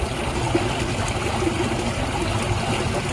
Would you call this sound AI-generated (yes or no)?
no